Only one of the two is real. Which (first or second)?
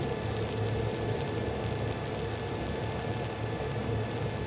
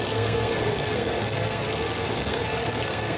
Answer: first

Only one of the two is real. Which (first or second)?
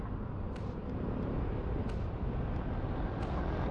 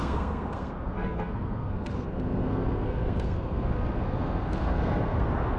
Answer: first